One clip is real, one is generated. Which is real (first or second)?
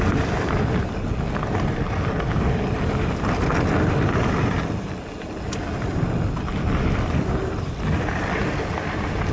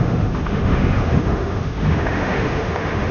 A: first